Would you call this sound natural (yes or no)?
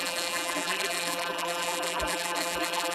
no